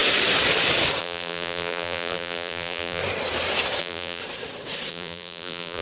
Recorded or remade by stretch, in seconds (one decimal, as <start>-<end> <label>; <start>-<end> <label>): 0.0-1.0 recorded; 1.0-3.0 remade; 3.0-3.8 recorded; 3.8-4.2 remade; 4.2-4.9 recorded; 4.9-5.8 remade